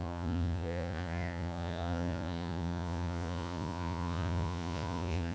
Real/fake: fake